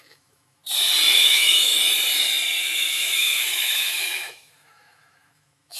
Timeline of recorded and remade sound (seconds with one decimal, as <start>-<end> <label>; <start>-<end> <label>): 0.0-0.6 remade; 0.6-1.2 recorded; 1.2-1.7 remade; 1.7-2.6 recorded; 2.6-5.8 remade